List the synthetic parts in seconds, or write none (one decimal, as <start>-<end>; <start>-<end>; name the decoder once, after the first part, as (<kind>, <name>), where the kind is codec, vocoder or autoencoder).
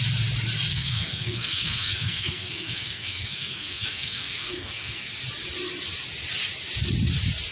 0.7-5.1 (codec, SNAC)